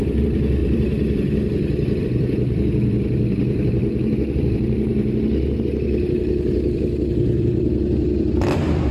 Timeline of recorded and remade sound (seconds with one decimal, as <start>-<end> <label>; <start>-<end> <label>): 0.0-3.8 remade; 3.8-4.4 recorded; 4.4-4.9 remade; 4.9-6.5 recorded; 6.5-8.9 remade